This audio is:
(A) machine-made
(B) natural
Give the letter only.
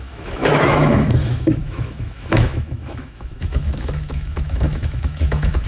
A